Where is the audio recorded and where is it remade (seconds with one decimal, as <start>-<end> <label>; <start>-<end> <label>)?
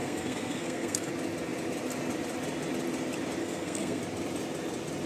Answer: 0.0-1.1 remade; 1.1-3.4 recorded; 3.4-4.0 remade; 4.0-5.1 recorded